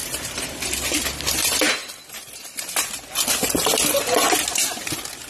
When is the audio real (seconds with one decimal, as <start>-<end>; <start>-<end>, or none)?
0.6-5.3